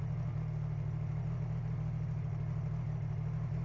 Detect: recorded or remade recorded